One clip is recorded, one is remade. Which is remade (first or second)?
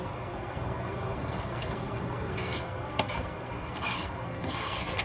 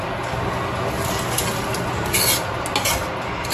first